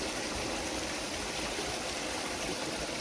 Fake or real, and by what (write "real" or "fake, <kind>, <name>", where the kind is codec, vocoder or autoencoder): real